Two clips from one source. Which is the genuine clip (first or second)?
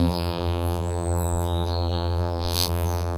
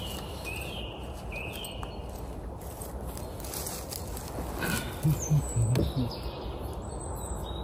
second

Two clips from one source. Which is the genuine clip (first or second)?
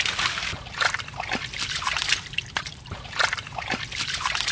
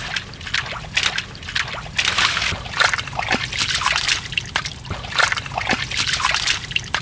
second